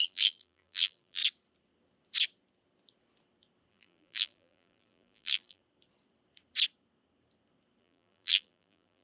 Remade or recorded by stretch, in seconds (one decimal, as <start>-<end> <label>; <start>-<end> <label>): 0.0-1.2 remade; 1.2-3.7 recorded; 3.7-5.6 remade; 5.6-7.8 recorded; 7.8-9.0 remade